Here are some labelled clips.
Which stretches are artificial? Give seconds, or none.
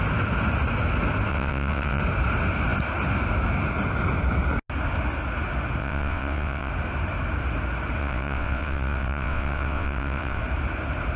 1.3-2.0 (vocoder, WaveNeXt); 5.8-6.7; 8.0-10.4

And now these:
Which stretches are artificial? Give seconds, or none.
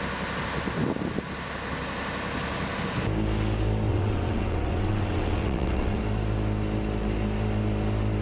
3.9-6.0 (vocoder, WaveNeXt)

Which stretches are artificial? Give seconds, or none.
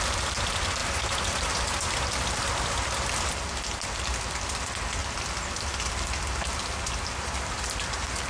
none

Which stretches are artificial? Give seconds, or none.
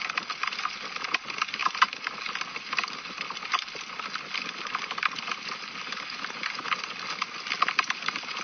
none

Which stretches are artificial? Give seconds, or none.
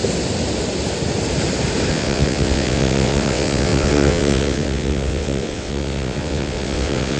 1.9-7.2 (vocoder, WaveNeXt)